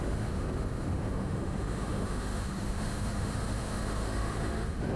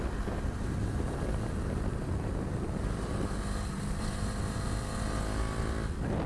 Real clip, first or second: second